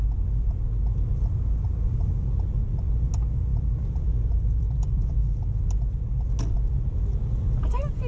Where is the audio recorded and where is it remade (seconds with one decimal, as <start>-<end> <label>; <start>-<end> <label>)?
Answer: 0.0-3.5 recorded; 3.5-5.2 remade; 5.2-8.1 recorded